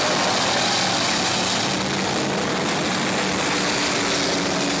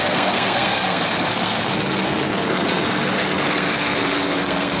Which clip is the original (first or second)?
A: first